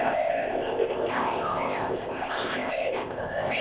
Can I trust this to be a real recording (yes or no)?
no